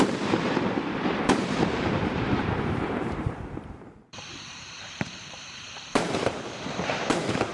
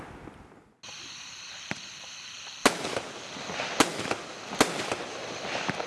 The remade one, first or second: first